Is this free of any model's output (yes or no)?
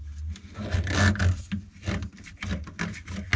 yes